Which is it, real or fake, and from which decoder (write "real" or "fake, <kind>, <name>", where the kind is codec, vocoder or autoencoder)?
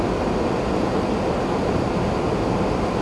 real